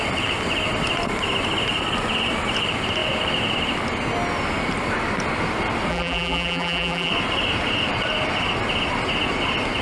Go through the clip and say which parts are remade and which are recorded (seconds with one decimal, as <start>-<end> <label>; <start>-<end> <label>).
0.0-5.9 recorded; 5.9-7.1 remade; 7.1-9.8 recorded